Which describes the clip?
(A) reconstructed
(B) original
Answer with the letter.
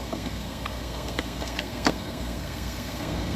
A